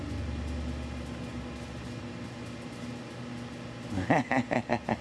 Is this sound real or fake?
real